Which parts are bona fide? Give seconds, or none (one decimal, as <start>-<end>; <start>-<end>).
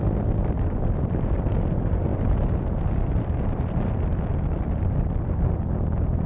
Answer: 0.0-0.4; 1.5-2.1; 4.2-6.3